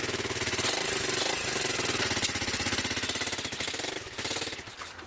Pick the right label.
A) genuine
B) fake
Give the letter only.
A